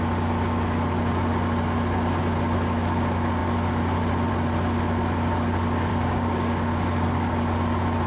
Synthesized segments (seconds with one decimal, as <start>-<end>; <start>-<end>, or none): 5.9-7.3